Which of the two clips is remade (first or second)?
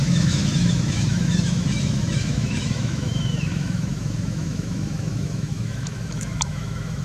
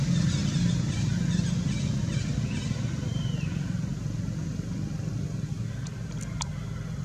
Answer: first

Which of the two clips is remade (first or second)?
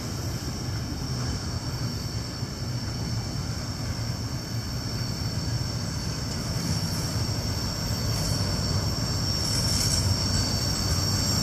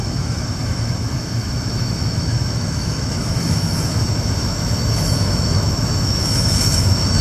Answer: second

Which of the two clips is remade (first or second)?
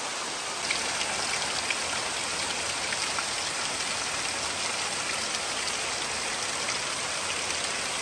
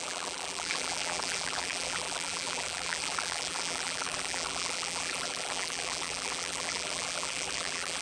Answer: second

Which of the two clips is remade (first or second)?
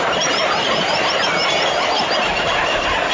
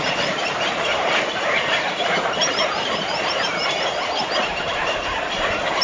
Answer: second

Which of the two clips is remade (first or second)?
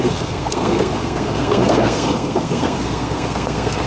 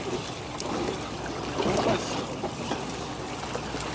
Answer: first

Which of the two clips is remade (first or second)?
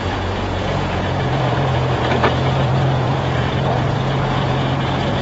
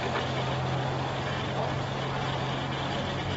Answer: first